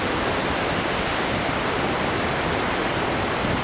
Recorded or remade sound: recorded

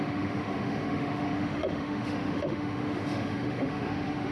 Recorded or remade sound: remade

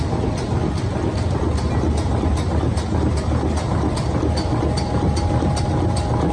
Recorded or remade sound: recorded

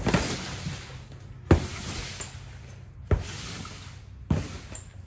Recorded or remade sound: recorded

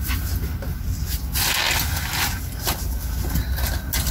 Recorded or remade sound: recorded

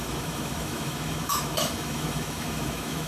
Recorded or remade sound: remade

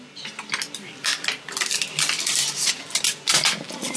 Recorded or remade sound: recorded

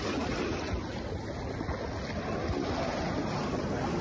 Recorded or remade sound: recorded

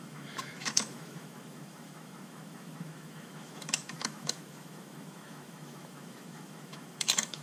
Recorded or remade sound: remade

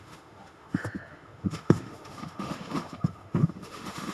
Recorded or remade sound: remade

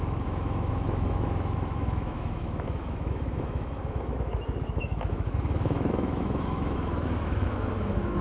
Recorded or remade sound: remade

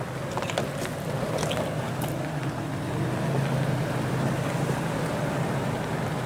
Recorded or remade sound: recorded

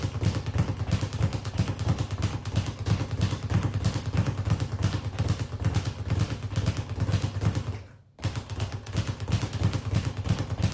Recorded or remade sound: recorded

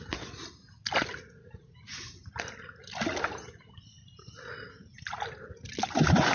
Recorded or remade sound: recorded